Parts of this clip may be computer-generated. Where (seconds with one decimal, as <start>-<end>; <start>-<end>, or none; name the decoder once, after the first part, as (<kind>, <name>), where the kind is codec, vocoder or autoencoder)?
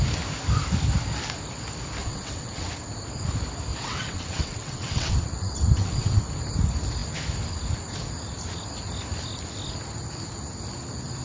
2.0-2.7 (vocoder, WaveNeXt); 3.7-6.2